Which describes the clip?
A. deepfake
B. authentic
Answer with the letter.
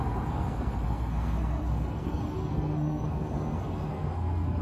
A